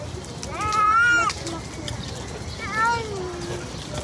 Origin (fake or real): real